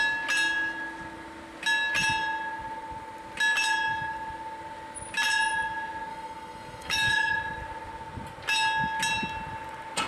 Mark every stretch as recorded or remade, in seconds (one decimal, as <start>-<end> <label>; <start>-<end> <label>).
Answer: 0.0-6.1 recorded; 6.1-7.4 remade; 7.4-10.1 recorded